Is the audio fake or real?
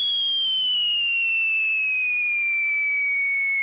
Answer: real